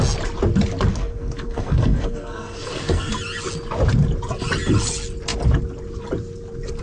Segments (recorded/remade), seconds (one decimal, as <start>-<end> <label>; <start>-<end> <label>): 0.0-0.9 recorded; 0.9-3.1 remade; 3.1-6.8 recorded